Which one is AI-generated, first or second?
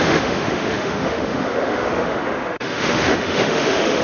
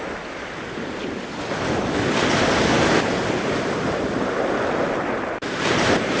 first